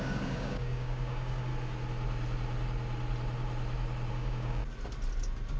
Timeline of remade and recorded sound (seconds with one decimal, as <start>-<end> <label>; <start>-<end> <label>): 0.0-1.5 remade; 1.5-4.1 recorded; 4.1-4.6 remade; 4.6-5.6 recorded